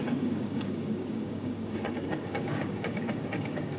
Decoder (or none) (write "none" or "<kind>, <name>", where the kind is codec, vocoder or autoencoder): codec, DAC